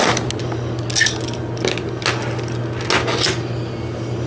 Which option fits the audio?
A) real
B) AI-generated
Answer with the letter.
A